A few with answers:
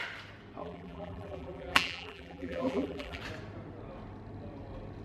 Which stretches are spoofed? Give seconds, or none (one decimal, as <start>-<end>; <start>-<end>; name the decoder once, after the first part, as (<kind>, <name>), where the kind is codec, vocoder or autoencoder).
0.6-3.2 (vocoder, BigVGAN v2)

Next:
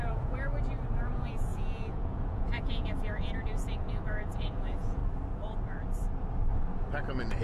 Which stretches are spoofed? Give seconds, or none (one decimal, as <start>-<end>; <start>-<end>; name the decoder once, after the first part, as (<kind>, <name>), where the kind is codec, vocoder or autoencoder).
0.0-0.5 (vocoder, Vocos); 1.0-5.0

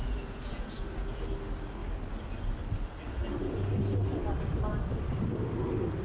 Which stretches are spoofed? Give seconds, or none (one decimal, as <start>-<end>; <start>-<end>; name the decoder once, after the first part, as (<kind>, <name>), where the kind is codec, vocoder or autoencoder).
0.0-1.2 (vocoder, Vocos)

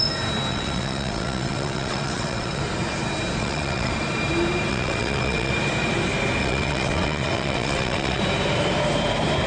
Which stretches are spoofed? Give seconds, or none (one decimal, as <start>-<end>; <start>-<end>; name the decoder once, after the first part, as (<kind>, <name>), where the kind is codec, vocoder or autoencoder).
0.5-2.6 (vocoder, WaveNeXt); 3.4-3.9; 4.7-5.5; 6.4-8.2

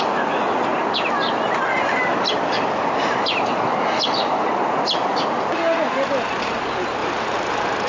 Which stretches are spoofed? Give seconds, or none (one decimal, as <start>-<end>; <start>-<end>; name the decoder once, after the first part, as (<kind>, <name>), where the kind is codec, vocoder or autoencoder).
7.0-7.9 (vocoder, BigVGAN v2)